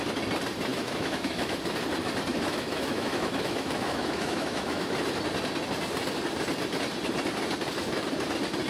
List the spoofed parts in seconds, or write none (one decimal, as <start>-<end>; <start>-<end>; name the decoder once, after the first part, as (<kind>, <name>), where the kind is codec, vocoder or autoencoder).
0.7-1.6 (autoencoder, DAC-VAE); 2.3-4.9